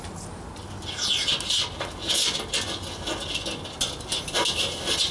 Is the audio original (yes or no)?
yes